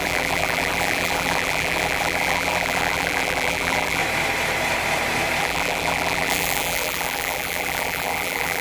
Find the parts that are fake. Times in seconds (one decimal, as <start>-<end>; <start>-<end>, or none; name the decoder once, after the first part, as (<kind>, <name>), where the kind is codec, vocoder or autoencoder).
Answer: 0.0-4.0 (vocoder, BigVGAN v2); 5.4-8.6